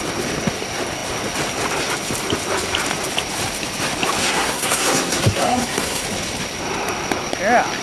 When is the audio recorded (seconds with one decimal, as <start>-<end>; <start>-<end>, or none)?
0.0-4.2; 6.0-7.8